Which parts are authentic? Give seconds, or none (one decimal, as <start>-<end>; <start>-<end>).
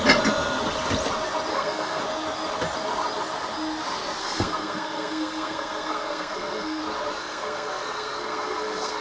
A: 0.0-1.5; 2.0-4.2; 6.8-7.2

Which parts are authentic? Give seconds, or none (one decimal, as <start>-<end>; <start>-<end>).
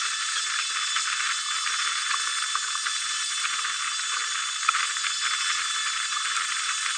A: 0.0-7.0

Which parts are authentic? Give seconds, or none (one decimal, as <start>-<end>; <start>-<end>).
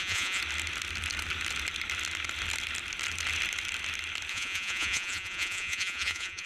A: 0.4-4.3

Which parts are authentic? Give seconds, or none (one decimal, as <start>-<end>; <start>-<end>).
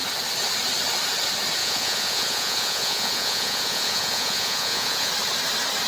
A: 0.0-1.6; 5.1-5.9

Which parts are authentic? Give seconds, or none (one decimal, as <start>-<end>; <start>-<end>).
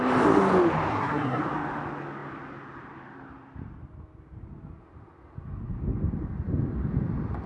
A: 0.0-0.9; 1.4-7.5